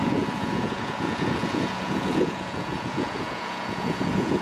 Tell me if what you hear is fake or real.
fake